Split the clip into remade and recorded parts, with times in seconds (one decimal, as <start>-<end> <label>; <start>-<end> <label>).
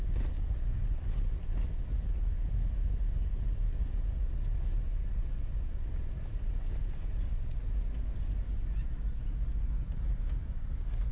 0.0-11.1 recorded